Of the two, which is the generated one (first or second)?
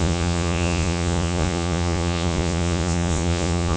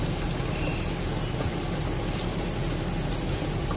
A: first